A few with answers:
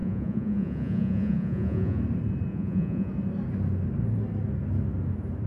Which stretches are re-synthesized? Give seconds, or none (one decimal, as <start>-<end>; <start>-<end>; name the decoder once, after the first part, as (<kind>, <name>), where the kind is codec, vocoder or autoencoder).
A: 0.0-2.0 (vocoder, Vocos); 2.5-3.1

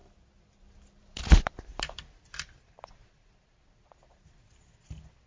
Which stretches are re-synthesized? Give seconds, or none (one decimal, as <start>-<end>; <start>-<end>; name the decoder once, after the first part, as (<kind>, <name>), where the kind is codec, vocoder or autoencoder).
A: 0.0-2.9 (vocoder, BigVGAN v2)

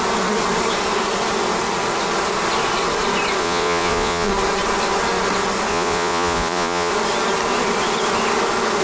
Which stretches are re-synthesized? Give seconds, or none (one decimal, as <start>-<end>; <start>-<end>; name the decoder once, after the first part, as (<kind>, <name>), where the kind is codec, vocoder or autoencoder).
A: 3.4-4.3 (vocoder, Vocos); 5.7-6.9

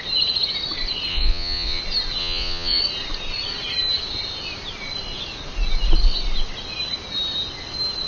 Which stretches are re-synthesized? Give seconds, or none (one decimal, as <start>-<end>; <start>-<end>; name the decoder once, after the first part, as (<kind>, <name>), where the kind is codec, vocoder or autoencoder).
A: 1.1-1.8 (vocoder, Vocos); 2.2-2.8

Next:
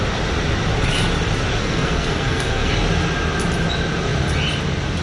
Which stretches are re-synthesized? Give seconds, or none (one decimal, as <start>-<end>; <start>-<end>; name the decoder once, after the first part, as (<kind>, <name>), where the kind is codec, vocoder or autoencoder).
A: 1.6-2.7 (codec, SNAC)